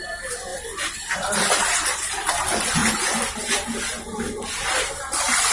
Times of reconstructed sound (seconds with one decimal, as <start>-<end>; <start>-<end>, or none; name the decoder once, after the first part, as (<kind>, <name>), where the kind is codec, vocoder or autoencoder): 0.5-2.3 (vocoder, BigVGAN v2); 2.8-3.7